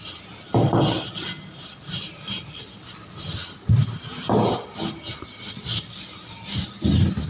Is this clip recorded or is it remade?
recorded